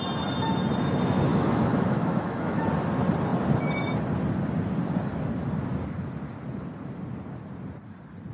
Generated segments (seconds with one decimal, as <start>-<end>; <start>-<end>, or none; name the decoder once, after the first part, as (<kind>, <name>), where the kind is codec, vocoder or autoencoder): 1.3-2.6 (autoencoder, DAC-VAE)

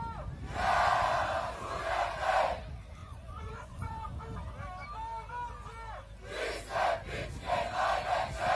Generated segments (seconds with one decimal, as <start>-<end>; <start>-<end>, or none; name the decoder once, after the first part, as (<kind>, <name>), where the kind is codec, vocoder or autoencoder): 3.0-4.2 (vocoder, Vocos)